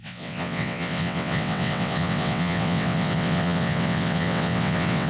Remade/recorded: remade